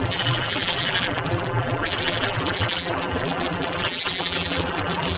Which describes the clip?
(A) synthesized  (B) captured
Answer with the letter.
A